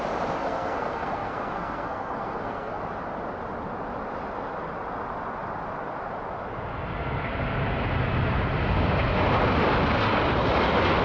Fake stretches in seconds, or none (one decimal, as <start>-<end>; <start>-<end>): 0.4-2.8